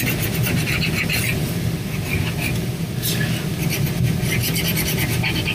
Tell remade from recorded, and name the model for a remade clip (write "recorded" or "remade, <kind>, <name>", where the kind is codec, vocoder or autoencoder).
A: recorded